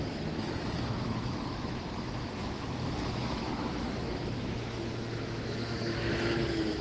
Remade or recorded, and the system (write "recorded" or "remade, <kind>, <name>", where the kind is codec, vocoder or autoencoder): remade, autoencoder, DAC-VAE